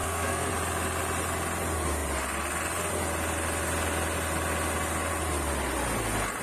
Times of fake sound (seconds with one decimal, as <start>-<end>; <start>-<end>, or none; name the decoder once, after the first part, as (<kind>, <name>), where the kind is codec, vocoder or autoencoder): 0.0-0.5 (codec, SNAC)